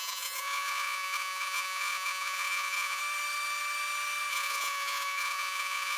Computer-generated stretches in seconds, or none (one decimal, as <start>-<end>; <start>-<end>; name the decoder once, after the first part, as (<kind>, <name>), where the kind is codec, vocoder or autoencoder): 0.0-3.0 (vocoder, Vocos); 4.3-6.0